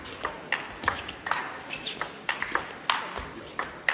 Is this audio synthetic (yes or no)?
no